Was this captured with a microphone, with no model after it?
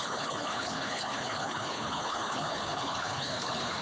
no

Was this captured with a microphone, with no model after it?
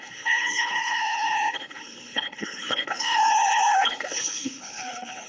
no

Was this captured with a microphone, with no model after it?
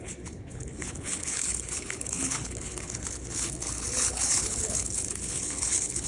no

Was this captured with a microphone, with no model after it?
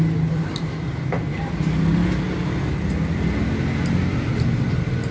yes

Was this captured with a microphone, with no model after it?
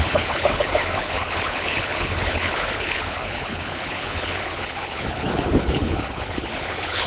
no